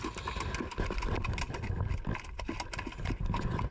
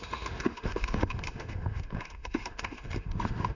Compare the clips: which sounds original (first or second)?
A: first